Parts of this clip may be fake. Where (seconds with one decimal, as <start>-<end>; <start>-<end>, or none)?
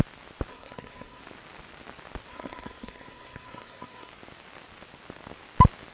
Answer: 0.5-1.2; 2.3-4.1